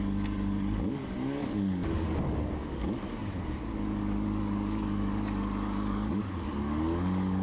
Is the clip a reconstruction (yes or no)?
yes